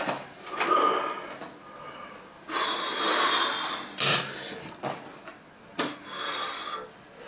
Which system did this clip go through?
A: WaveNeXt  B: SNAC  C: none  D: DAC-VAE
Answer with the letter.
C